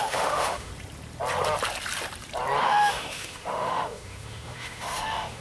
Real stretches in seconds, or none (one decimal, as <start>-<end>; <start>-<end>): 0.7-2.6